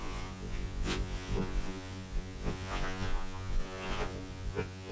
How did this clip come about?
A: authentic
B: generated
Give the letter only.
B